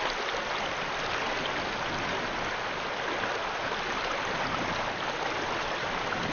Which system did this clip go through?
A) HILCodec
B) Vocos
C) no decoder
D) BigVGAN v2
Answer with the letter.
C